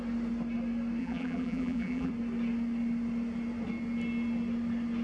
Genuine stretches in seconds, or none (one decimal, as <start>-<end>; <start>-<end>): 0.0-1.0; 2.1-5.0